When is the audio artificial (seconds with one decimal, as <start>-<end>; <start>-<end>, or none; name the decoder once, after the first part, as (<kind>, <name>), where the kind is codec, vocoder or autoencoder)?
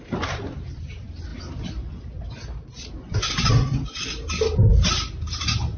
none